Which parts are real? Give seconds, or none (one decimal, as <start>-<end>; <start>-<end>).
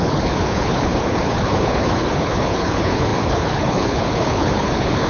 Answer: none